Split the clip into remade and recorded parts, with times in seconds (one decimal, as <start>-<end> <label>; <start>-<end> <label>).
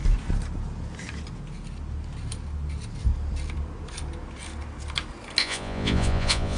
0.0-5.4 recorded; 5.4-6.6 remade